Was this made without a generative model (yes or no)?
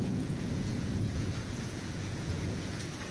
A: no